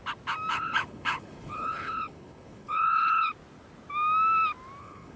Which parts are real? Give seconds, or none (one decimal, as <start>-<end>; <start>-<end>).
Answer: 0.0-0.5; 3.3-4.8